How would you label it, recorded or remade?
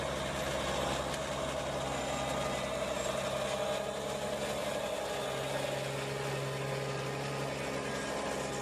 recorded